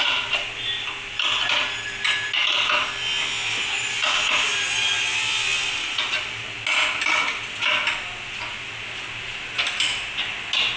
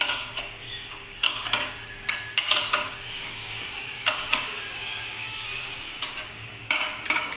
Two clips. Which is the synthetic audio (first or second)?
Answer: second